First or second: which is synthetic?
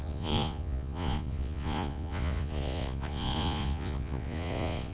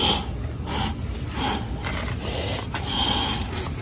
first